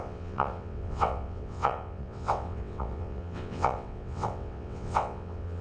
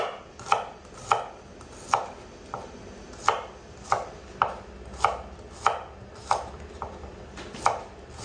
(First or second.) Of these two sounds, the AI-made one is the first